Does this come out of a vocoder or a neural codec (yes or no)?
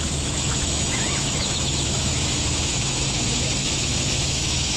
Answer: yes